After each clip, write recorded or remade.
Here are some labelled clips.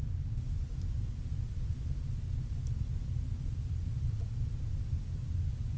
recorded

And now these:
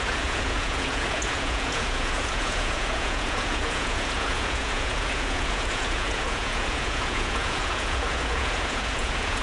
remade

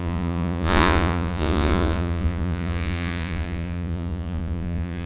remade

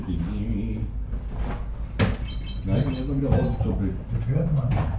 recorded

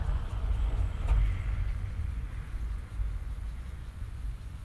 remade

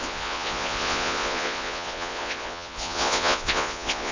remade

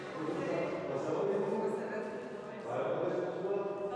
recorded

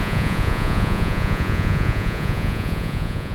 remade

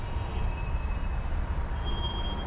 recorded